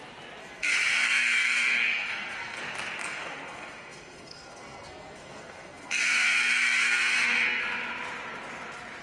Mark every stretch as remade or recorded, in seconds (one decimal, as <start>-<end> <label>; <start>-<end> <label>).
0.0-0.4 recorded; 0.4-2.6 remade; 2.6-3.0 recorded; 3.0-7.6 remade; 7.6-9.0 recorded